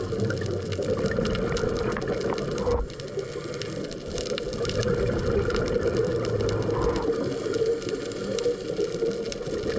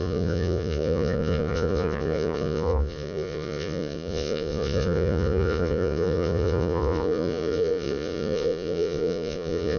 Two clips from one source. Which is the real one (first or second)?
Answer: first